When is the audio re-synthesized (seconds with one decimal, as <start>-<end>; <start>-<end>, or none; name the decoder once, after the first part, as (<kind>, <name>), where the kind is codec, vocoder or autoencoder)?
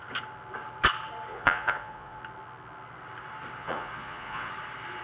1.3-2.2 (vocoder, Vocos); 3.6-4.5